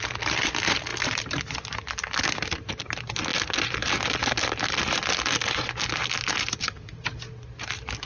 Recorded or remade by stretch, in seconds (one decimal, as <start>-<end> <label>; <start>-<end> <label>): 0.0-8.1 recorded